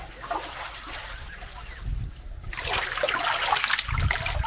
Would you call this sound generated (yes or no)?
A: no